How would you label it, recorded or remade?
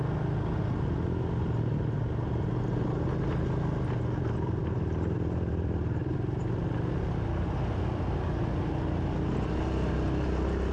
recorded